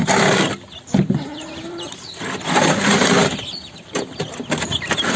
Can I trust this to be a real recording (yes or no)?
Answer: yes